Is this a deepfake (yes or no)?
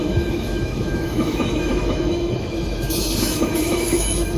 yes